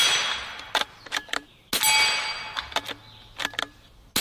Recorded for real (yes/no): yes